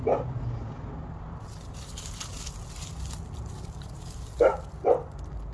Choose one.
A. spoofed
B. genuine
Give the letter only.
B